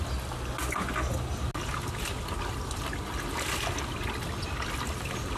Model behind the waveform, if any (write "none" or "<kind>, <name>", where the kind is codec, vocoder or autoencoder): none